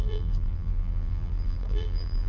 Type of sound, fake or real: fake